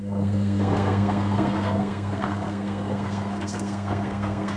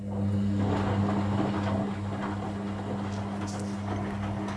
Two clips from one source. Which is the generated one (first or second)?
first